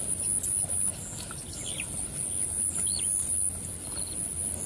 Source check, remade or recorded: recorded